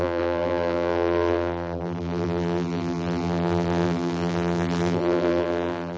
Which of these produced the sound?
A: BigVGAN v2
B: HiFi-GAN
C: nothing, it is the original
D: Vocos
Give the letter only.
A